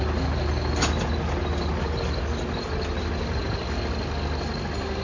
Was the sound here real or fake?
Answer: real